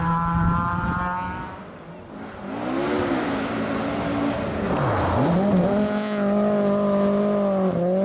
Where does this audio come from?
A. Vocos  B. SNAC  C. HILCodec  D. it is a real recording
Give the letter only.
D